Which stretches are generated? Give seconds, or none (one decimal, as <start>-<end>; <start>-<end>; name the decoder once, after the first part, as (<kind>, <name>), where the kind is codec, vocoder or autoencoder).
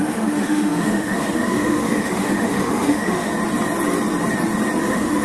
0.0-3.3 (autoencoder, DAC-VAE); 4.8-5.2